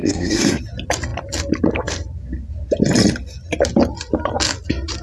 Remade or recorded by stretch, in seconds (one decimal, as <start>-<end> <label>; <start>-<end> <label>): 0.0-0.6 remade; 0.6-5.0 recorded